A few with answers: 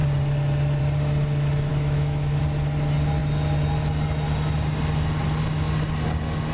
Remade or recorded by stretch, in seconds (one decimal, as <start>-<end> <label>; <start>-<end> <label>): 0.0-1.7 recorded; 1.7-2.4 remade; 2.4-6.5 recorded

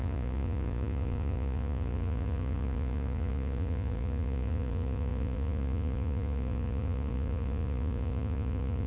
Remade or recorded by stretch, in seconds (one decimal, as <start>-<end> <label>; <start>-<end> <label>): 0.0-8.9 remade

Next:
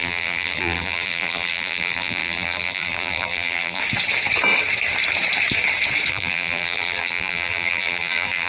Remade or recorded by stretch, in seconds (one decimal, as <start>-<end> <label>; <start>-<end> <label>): 0.0-3.8 remade; 3.8-6.1 recorded; 6.1-8.5 remade